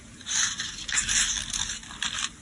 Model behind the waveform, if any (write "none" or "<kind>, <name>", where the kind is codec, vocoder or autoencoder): none